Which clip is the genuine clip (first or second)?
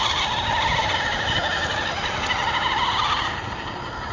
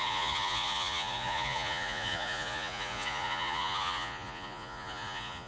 first